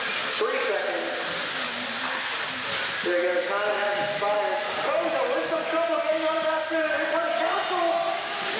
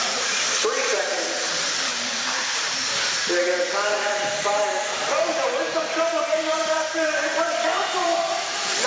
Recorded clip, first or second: first